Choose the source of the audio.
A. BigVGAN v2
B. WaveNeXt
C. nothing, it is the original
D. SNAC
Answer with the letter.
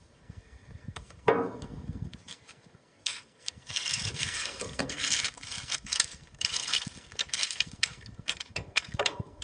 D